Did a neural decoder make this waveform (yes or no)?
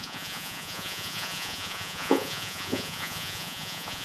yes